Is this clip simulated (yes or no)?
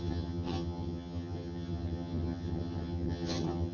yes